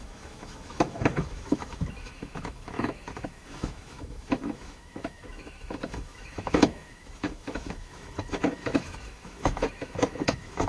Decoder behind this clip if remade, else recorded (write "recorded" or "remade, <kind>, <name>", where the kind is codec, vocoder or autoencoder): remade, autoencoder, DAC-VAE